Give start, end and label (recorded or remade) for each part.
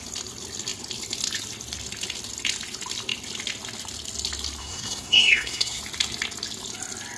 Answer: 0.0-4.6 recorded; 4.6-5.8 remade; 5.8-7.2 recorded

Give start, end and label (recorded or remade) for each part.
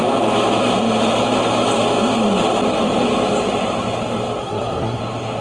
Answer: 0.0-4.4 recorded; 4.4-5.0 remade; 5.0-5.4 recorded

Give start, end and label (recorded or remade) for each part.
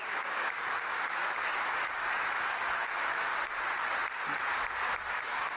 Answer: 0.0-3.3 remade; 3.3-5.1 recorded; 5.1-5.6 remade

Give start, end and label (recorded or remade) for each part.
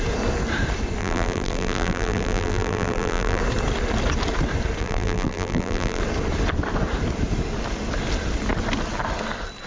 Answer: 0.0-1.0 recorded; 1.0-3.4 remade; 3.4-4.8 recorded; 4.8-6.0 remade; 6.0-9.7 recorded